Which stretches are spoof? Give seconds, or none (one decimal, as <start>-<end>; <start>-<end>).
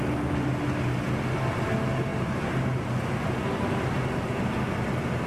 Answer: none